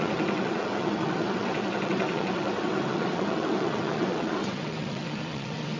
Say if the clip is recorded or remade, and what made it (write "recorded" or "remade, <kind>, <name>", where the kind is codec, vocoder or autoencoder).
remade, vocoder, WaveNeXt